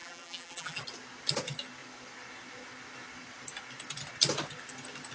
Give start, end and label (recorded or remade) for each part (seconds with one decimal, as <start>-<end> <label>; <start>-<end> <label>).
0.0-0.8 remade; 0.8-5.1 recorded

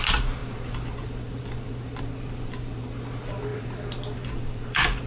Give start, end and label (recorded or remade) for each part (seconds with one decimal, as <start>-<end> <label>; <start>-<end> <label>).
0.0-5.1 remade

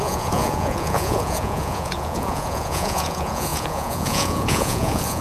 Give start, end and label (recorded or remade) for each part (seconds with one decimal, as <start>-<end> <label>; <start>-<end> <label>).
0.0-5.2 remade

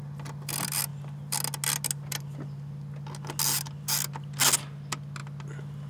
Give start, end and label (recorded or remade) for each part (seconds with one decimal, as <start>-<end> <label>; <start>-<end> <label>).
0.0-5.9 recorded

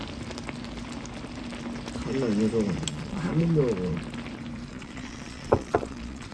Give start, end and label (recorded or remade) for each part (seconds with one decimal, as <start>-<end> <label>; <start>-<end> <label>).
0.0-2.9 recorded; 2.9-3.3 remade; 3.3-4.7 recorded; 4.7-6.3 remade

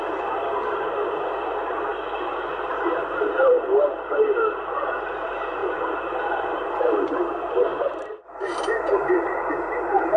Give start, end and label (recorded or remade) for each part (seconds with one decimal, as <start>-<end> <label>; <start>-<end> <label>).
0.0-1.9 remade; 1.9-2.7 recorded; 2.7-10.2 remade

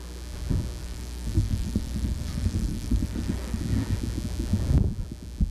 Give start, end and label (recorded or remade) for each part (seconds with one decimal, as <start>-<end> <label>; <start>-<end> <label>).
0.0-0.8 recorded; 0.8-3.6 remade; 3.6-5.5 recorded

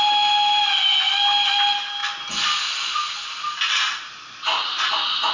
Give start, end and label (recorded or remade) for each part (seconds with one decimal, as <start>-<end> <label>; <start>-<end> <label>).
0.0-5.3 recorded